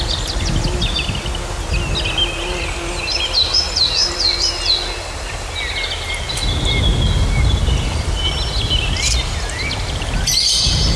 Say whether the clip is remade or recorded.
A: recorded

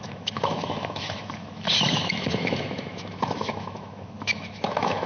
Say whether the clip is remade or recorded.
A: remade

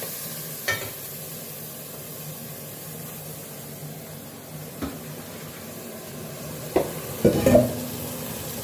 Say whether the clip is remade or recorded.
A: recorded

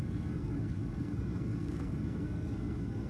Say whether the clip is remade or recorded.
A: remade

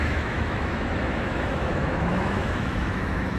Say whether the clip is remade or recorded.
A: remade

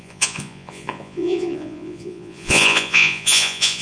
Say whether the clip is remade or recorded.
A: remade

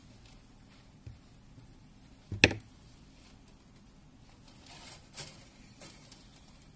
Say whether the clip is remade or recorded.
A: recorded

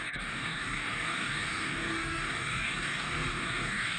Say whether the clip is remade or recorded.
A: remade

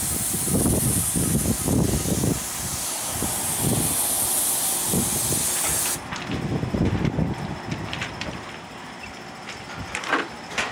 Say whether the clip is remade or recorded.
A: recorded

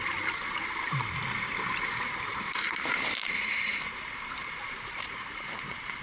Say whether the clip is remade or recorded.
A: remade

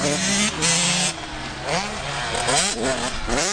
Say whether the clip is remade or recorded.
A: recorded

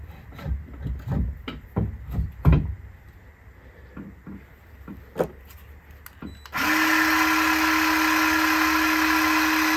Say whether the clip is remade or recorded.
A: recorded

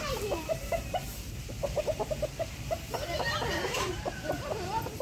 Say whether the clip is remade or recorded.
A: remade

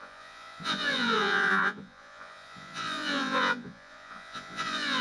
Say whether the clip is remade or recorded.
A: remade